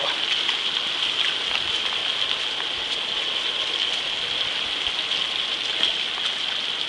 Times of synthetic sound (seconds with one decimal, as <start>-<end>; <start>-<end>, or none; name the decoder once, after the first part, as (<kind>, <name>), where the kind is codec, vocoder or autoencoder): none